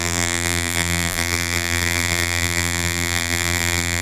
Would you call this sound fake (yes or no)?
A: yes